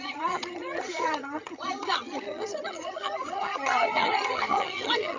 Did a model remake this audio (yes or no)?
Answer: yes